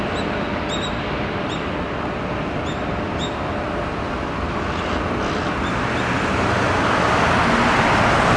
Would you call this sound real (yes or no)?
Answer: yes